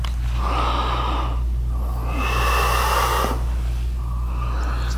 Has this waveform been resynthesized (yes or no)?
no